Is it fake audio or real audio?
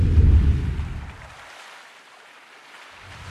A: real